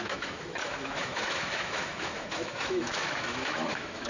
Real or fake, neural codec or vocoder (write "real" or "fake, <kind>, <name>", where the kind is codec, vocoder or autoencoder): fake, autoencoder, DAC-VAE